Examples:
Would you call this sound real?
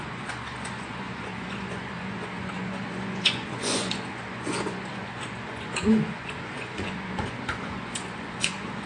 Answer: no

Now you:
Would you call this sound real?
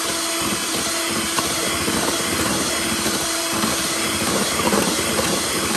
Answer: no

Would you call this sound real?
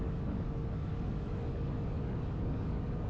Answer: no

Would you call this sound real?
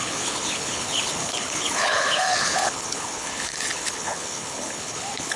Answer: no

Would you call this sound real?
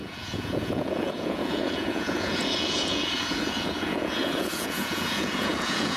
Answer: no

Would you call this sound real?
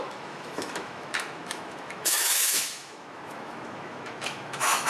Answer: no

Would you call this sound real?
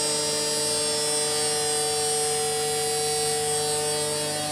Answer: yes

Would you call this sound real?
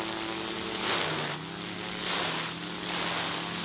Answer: yes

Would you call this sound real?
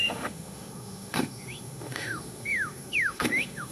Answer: no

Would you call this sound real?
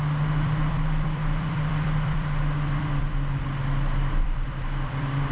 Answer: no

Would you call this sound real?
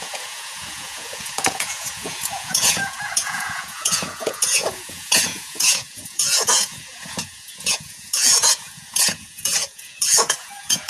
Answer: no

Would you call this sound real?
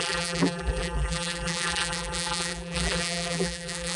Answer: no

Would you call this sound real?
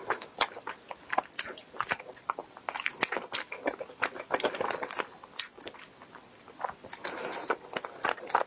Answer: yes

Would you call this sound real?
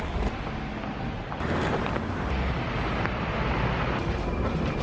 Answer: yes